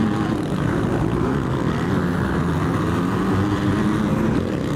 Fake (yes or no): no